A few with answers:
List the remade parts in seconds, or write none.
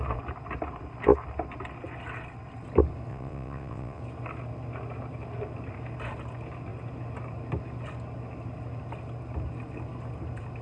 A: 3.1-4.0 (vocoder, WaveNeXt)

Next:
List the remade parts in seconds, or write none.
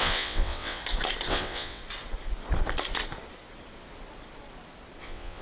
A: 0.0-0.8 (vocoder, WaveNeXt); 1.3-1.8; 5.0-5.4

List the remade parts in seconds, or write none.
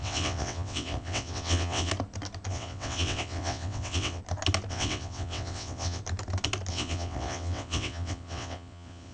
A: 0.0-1.9 (vocoder, WaveNeXt); 2.5-4.2; 4.7-6.0; 6.7-9.1